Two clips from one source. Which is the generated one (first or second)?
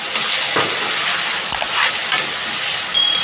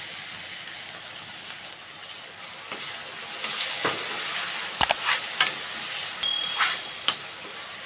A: first